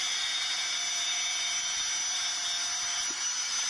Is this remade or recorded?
recorded